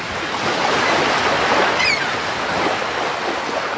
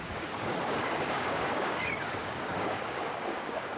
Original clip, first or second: first